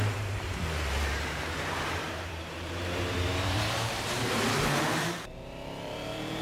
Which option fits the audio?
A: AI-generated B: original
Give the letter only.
A